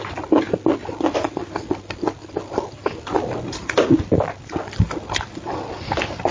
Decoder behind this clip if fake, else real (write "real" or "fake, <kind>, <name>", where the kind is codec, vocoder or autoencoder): real